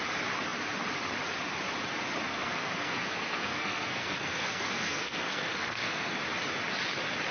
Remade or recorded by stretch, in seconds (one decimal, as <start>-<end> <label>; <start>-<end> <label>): 0.0-2.3 recorded; 2.3-6.2 remade; 6.2-7.3 recorded